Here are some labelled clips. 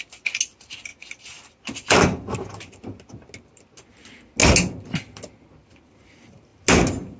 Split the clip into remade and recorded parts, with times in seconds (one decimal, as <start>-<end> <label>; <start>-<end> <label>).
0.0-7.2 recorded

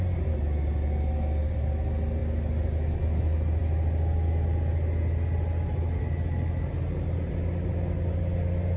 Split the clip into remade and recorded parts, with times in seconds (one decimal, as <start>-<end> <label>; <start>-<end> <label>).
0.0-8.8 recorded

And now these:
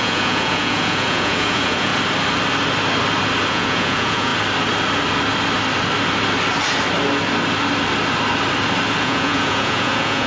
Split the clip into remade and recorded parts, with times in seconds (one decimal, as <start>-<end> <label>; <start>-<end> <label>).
0.0-1.9 remade; 1.9-3.5 recorded; 3.5-4.3 remade; 4.3-9.0 recorded; 9.0-10.3 remade

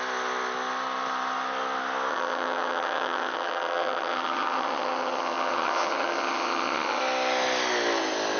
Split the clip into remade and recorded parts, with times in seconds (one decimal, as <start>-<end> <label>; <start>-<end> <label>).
0.0-2.1 recorded; 2.1-7.0 remade; 7.0-8.4 recorded

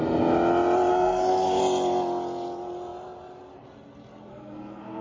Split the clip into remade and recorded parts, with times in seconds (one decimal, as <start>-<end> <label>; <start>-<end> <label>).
0.0-0.9 recorded; 0.9-1.6 remade; 1.6-4.3 recorded; 4.3-5.0 remade

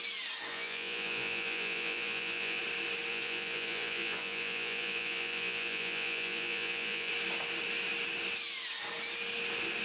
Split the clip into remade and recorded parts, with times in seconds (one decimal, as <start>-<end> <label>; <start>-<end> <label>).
0.0-0.5 recorded; 0.5-2.6 remade; 2.6-3.1 recorded; 3.1-7.1 remade; 7.1-9.8 recorded

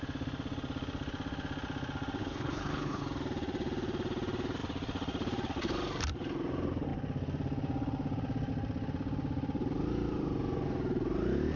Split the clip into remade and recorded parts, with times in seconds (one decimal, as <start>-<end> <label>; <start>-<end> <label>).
0.0-2.2 recorded; 2.2-3.0 remade; 3.0-11.6 recorded